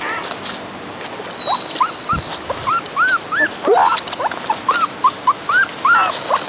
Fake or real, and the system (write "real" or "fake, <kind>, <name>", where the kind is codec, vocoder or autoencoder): real